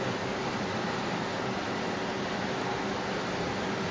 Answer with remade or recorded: recorded